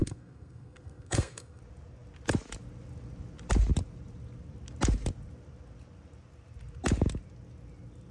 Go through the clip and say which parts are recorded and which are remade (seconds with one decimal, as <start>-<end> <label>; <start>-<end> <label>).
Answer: 0.0-1.6 remade; 1.6-8.1 recorded